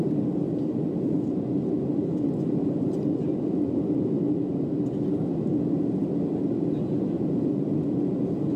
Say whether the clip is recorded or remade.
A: recorded